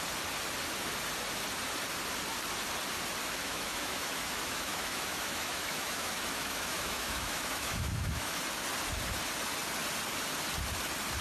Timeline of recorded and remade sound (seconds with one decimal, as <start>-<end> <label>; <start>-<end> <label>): 0.0-3.2 recorded; 3.2-8.4 remade; 8.4-11.2 recorded